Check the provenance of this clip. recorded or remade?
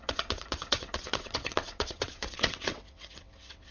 remade